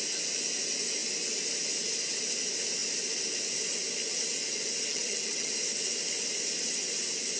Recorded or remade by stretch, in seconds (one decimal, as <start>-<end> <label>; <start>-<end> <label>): 0.0-4.9 recorded; 4.9-5.5 remade; 5.5-7.4 recorded